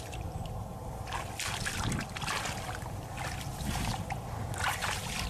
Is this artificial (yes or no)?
no